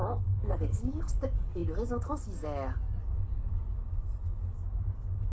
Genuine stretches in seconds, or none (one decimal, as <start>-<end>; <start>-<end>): 1.1-5.3